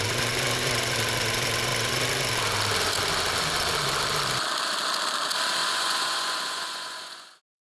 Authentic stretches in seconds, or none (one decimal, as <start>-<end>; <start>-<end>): 0.0-5.6